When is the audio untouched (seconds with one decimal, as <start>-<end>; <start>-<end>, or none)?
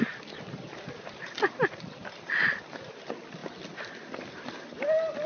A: 0.0-5.3